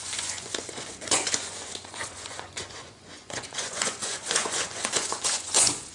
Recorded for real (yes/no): no